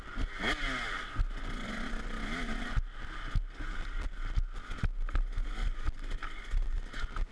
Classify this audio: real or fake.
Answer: real